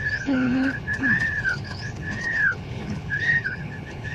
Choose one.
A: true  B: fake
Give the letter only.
B